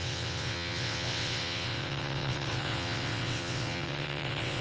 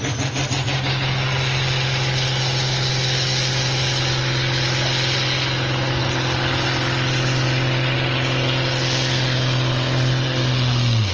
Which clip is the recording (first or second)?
second